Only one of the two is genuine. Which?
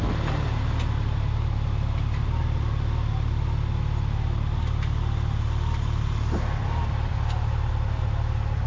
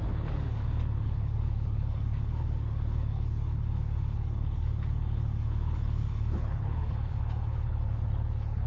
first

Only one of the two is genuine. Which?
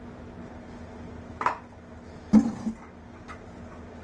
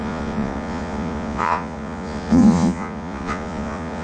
first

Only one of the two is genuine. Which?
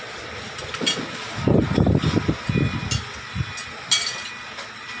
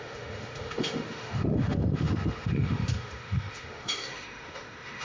first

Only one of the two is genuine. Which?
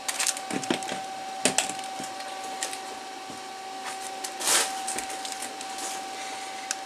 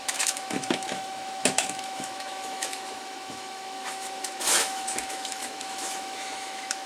first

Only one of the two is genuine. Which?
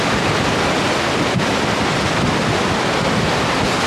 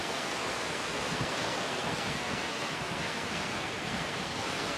first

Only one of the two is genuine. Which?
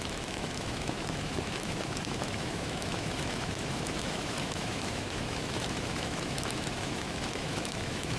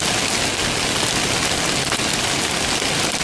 second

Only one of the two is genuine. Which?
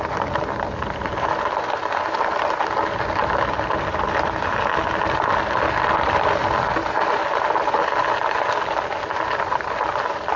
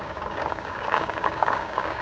first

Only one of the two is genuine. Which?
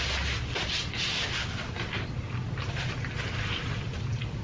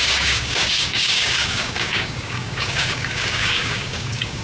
first